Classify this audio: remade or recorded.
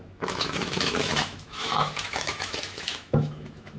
remade